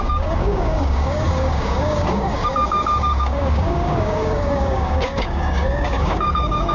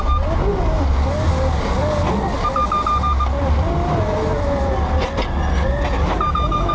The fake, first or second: first